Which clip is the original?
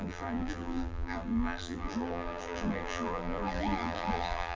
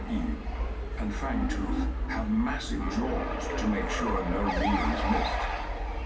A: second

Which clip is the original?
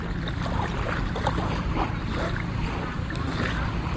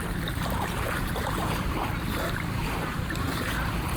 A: first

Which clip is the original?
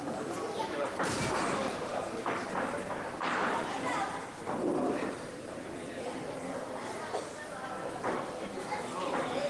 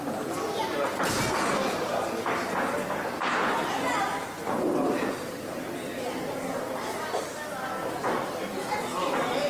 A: second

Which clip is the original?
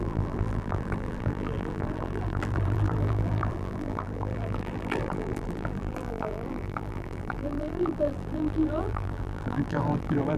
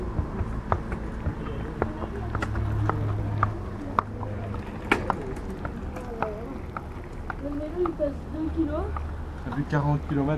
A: second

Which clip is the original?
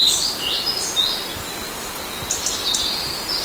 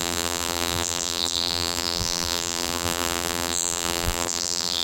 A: first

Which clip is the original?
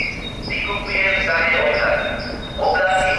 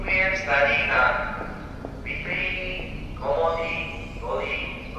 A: second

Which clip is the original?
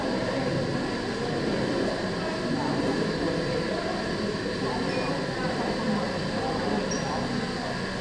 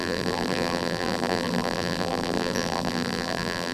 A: first